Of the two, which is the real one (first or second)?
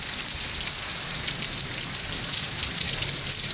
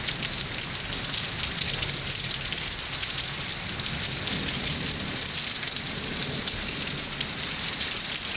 second